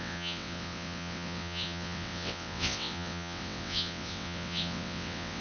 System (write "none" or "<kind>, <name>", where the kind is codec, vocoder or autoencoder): vocoder, WaveNeXt